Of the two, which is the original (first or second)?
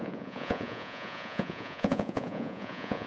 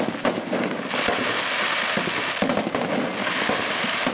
second